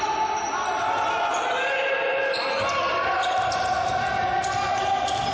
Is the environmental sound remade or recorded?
recorded